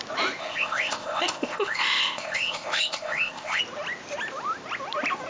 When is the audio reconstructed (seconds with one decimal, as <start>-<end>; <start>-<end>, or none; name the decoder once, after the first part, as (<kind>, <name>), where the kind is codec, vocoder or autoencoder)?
0.4-3.6 (codec, ZipCodec)

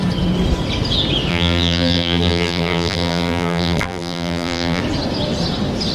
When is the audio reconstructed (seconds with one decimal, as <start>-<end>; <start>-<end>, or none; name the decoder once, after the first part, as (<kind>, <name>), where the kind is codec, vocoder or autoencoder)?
1.3-4.8 (vocoder, BigVGAN v2)

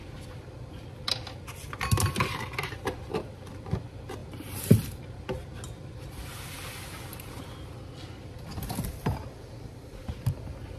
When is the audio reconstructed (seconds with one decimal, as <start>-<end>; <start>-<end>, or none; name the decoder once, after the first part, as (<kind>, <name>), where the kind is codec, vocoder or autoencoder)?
4.2-5.2 (vocoder, BigVGAN v2)

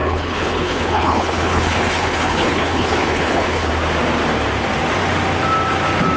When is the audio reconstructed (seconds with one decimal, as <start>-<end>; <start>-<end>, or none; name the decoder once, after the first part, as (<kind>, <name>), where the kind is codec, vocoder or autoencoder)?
0.0-3.7 (codec, HILCodec)

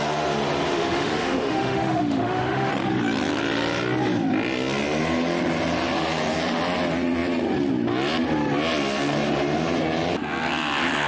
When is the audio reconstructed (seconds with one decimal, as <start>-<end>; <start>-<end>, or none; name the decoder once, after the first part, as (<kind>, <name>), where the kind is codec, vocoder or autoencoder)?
0.7-2.7 (autoencoder, DAC-VAE)

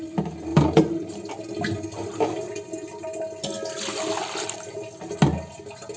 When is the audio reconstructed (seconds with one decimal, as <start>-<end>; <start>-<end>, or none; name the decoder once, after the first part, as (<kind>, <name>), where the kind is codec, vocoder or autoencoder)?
0.5-1.1 (vocoder, BigVGAN v2)